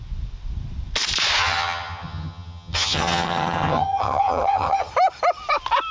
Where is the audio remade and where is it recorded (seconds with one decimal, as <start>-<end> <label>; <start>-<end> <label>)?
0.0-1.4 recorded; 1.4-4.9 remade; 4.9-5.9 recorded

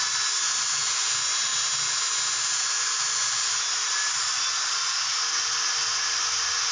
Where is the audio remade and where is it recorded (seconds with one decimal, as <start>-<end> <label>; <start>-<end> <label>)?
0.0-6.7 recorded

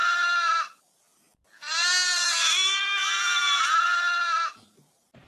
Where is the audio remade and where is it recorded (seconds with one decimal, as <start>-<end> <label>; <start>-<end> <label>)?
0.0-5.3 recorded

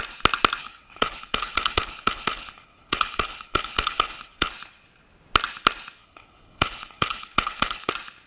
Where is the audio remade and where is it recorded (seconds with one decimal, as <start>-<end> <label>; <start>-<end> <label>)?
0.0-0.6 recorded; 0.6-4.5 remade; 4.5-6.0 recorded; 6.0-7.9 remade; 7.9-8.3 recorded